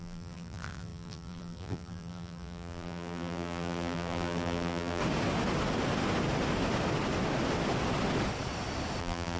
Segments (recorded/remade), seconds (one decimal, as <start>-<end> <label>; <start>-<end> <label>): 0.0-5.0 remade; 5.0-9.0 recorded; 9.0-9.4 remade